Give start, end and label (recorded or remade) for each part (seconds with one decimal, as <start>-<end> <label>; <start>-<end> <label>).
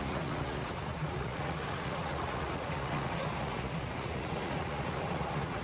0.0-5.6 remade